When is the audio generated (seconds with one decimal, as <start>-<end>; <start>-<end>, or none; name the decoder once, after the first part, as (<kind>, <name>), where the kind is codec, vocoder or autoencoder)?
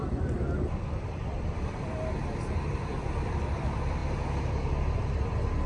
0.0-4.0 (vocoder, BigVGAN v2); 5.0-5.7